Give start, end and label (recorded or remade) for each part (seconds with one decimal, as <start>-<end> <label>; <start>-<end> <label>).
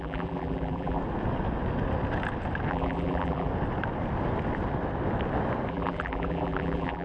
0.0-1.0 remade; 1.0-2.7 recorded; 2.7-3.5 remade; 3.5-5.7 recorded; 5.7-7.0 remade